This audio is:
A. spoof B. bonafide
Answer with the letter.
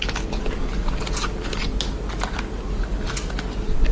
B